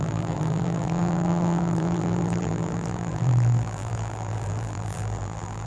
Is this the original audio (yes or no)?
no